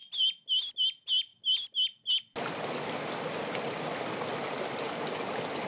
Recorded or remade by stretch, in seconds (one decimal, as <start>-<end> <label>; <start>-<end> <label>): 0.0-5.7 recorded